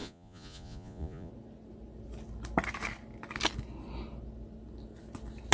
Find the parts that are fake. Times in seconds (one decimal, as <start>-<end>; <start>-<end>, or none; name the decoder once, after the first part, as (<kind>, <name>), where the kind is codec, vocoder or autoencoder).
0.0-1.3 (vocoder, Vocos)